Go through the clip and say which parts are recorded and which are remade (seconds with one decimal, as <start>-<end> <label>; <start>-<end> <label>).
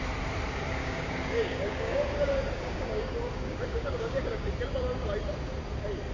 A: 0.0-0.8 recorded; 0.8-4.5 remade; 4.5-6.1 recorded